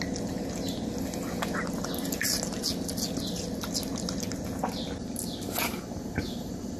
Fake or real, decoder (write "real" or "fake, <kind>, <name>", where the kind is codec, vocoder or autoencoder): real